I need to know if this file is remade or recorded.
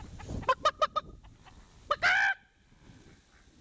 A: recorded